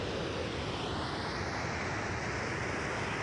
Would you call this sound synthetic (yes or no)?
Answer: no